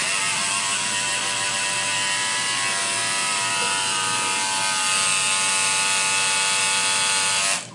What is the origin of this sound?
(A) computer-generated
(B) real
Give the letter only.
B